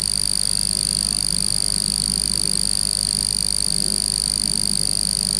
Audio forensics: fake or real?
real